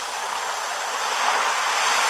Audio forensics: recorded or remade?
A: recorded